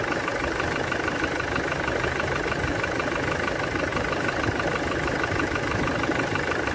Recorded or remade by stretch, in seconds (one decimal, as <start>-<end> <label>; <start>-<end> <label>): 0.0-6.7 remade